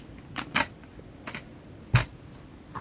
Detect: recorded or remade recorded